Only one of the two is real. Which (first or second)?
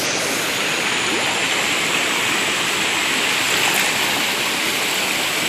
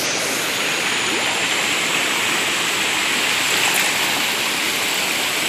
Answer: second